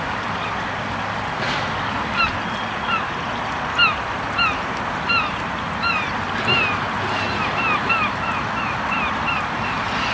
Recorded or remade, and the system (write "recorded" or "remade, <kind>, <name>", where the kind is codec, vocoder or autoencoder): recorded